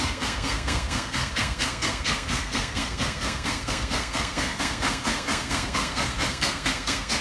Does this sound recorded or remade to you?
remade